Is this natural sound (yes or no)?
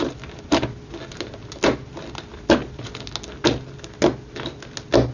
yes